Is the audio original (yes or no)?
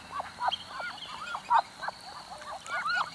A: yes